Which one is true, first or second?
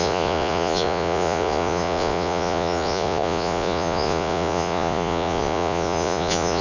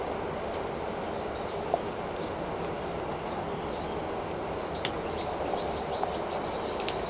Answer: second